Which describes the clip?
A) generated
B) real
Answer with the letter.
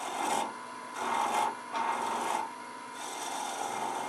B